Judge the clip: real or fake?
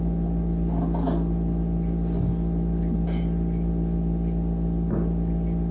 real